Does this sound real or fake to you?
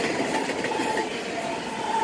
real